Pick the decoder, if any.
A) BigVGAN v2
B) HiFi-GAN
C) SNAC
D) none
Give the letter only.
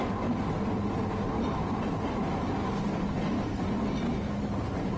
D